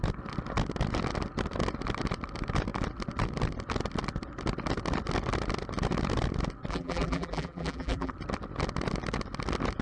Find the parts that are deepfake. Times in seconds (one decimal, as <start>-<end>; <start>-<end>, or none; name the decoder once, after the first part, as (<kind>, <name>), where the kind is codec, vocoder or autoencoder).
6.7-8.1 (vocoder, BigVGAN v2)